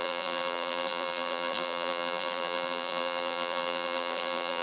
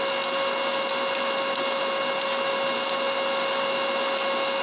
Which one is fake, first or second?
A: first